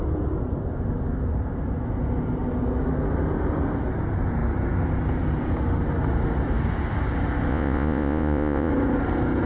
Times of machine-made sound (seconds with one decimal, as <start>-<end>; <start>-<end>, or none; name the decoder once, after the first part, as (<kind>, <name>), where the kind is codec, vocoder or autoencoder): 7.5-8.7 (vocoder, Vocos)